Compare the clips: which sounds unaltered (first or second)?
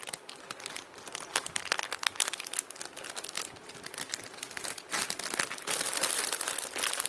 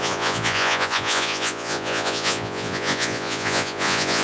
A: first